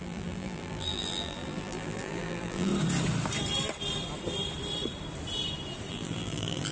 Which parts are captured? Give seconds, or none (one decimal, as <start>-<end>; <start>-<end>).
2.7-5.9